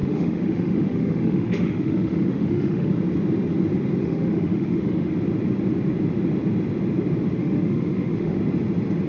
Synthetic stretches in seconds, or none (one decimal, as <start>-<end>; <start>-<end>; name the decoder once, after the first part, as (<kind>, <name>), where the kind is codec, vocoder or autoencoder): 0.0-2.9 (autoencoder, DAC-VAE); 4.0-5.1; 7.4-8.4